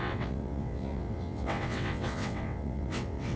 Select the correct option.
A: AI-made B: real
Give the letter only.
A